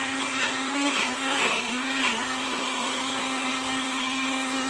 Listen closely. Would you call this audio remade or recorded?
remade